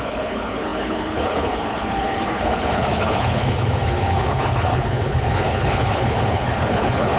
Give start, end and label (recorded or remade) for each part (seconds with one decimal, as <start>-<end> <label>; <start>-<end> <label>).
0.0-7.2 remade